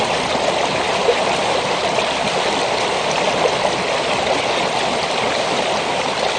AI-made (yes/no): no